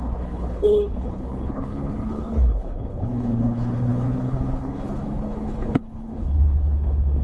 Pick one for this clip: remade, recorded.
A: remade